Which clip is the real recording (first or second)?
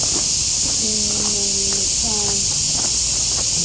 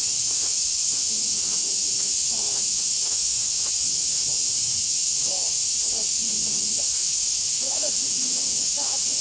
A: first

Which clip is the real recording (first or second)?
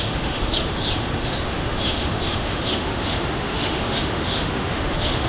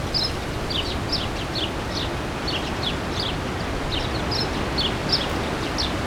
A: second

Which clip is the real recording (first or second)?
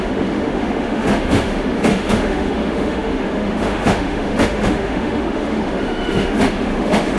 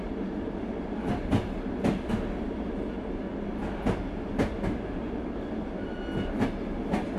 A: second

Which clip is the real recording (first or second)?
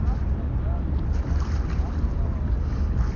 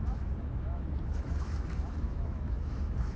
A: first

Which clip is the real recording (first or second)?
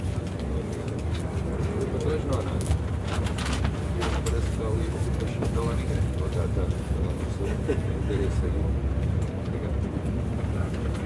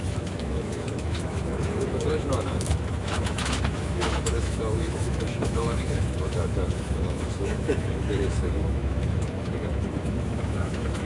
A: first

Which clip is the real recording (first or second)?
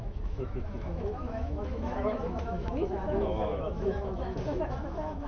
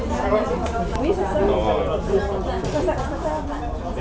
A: second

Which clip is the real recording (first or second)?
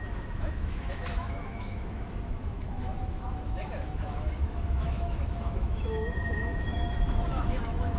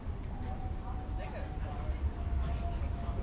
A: second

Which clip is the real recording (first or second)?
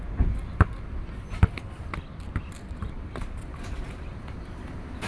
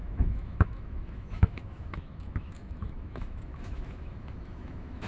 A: first